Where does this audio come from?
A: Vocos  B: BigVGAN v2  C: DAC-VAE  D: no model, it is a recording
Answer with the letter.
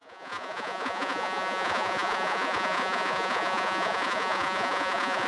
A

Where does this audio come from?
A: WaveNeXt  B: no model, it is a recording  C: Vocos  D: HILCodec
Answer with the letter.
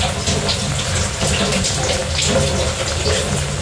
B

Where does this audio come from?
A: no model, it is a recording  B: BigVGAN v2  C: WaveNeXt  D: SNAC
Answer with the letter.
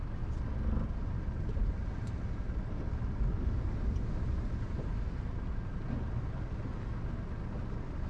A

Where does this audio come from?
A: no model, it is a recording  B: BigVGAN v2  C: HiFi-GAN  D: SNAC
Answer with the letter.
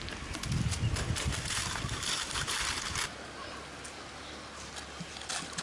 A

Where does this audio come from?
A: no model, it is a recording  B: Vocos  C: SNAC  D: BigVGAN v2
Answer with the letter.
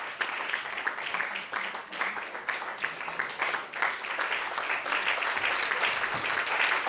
A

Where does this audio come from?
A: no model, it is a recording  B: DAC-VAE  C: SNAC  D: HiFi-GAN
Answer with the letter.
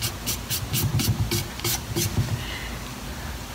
A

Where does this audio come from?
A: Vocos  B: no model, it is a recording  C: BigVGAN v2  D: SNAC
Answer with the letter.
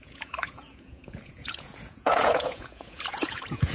A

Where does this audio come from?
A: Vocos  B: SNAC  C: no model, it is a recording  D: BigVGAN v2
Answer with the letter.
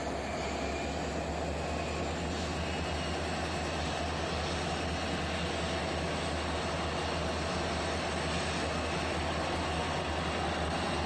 C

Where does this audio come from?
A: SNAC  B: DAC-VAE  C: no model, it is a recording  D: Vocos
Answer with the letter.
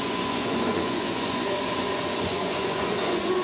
D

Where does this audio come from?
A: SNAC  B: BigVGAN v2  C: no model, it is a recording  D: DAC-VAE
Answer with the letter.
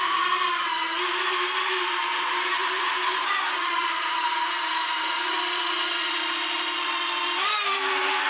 B